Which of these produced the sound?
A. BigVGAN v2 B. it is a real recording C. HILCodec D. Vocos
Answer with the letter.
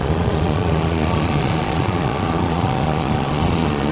D